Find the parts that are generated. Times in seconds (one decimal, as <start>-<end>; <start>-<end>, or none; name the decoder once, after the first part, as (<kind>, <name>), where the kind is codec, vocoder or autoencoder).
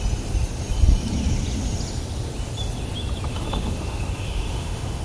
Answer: 3.3-5.0 (autoencoder, DAC-VAE)